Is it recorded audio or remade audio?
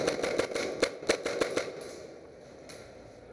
recorded